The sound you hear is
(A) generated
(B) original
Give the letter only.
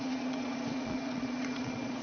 A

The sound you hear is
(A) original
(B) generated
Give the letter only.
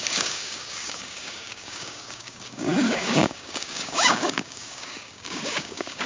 B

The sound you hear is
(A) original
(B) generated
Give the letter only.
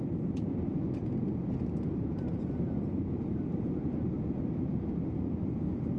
A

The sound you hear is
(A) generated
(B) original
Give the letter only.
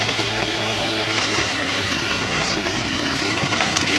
A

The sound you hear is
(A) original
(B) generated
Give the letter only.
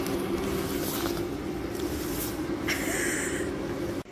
A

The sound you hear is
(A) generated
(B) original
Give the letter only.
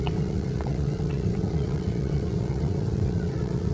A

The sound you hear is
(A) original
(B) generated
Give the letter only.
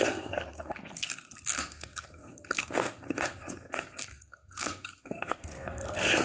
B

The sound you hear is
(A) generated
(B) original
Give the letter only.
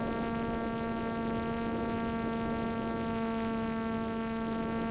B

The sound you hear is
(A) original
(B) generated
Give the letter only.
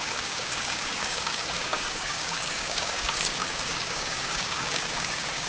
B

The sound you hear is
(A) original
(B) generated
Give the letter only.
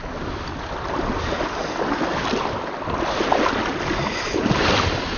A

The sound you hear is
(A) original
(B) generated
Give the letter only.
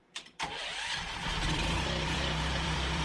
B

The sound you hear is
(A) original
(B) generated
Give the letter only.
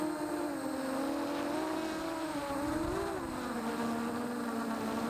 A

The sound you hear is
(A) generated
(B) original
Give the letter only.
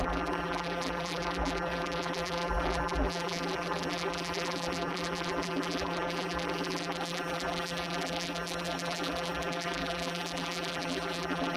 A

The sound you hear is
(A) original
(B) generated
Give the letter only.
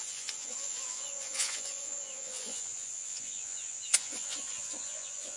B